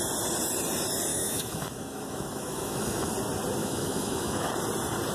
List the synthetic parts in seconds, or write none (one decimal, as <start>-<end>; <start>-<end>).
1.1-3.1; 3.6-4.5